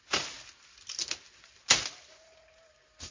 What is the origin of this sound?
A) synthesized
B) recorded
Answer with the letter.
B